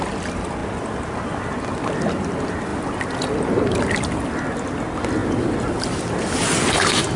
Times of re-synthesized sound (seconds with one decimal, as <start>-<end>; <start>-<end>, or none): none

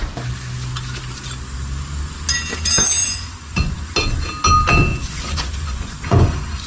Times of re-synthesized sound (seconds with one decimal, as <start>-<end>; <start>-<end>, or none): 3.0-3.9; 4.9-6.7

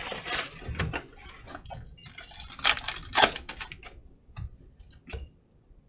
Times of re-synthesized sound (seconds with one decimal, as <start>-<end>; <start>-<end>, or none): none

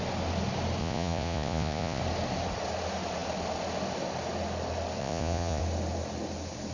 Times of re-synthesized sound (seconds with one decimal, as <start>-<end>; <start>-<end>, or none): 0.8-2.0; 5.0-5.6

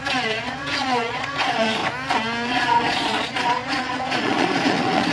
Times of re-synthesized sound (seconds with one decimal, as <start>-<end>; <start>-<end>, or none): 0.0-1.8; 2.5-5.1

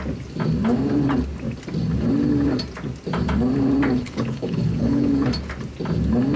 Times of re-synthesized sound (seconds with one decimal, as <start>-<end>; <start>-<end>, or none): 4.0-5.1